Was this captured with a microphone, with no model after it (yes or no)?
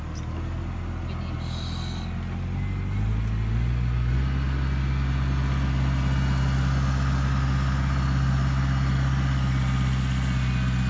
yes